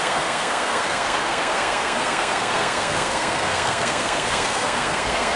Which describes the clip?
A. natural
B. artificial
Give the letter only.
B